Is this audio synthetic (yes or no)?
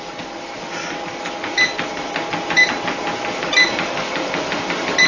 no